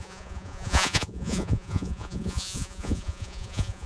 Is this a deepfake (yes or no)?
yes